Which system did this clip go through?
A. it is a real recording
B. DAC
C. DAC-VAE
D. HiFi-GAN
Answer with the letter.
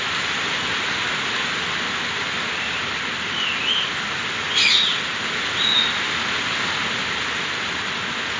A